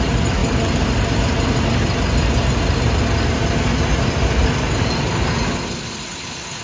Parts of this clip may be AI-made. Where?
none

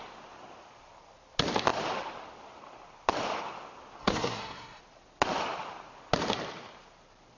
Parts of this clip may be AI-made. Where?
4.0-4.8

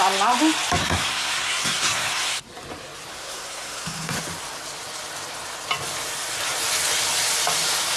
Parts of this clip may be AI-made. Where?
0.8-2.4; 3.1-4.2

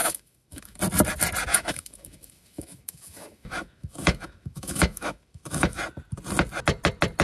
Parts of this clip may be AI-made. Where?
0.0-0.8; 1.5-5.8

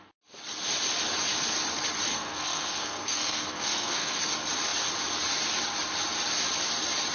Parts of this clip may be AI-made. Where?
2.1-4.2

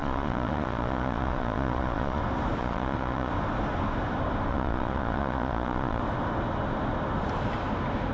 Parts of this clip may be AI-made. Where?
0.0-2.2; 2.6-3.3; 4.5-6.0